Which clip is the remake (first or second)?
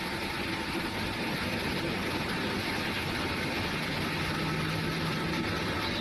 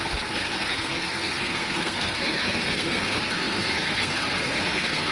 second